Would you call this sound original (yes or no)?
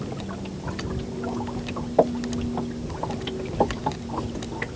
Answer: yes